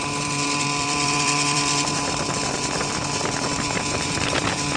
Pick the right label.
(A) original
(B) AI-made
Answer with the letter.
B